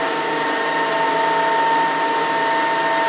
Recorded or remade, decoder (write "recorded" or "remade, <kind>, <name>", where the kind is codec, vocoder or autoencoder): recorded